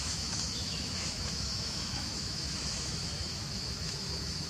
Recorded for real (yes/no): no